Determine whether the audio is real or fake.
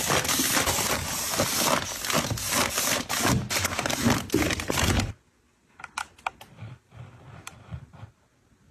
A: real